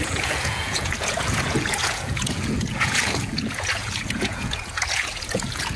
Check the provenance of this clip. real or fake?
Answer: fake